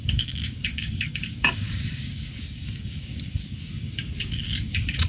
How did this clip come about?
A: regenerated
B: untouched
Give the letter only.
A